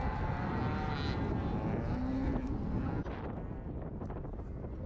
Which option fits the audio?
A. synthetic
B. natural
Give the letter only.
B